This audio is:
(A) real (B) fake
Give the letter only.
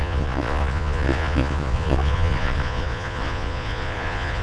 B